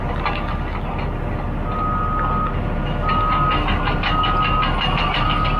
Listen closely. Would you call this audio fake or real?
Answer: real